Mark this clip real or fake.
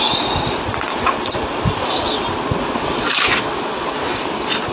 real